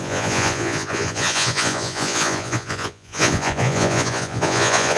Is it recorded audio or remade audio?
remade